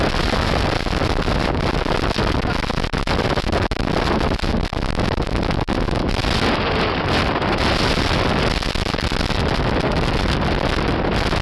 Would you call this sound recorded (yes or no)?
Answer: yes